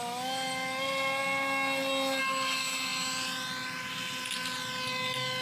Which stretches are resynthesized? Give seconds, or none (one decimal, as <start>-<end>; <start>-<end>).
none